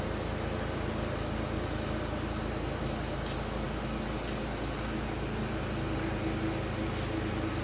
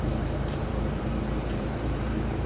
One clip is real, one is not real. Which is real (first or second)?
first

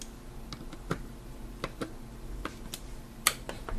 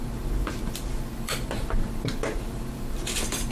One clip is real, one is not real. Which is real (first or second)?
first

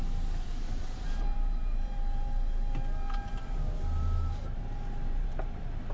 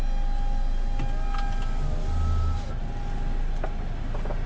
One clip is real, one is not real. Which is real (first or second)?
second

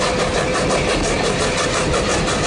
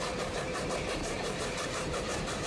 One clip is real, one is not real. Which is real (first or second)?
first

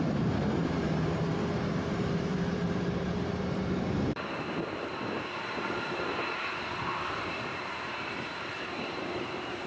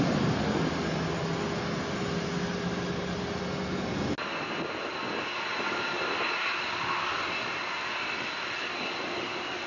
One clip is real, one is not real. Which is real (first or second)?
second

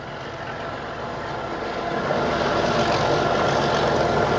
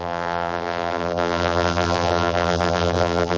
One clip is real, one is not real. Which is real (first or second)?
first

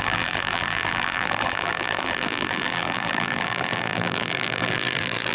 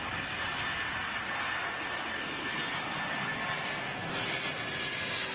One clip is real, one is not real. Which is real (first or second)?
second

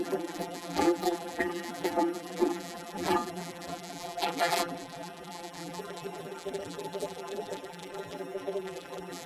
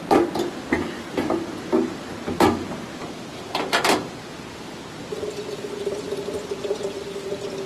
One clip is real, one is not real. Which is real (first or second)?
second